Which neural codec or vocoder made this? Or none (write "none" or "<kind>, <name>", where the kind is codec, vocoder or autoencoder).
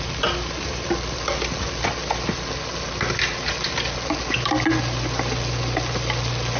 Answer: none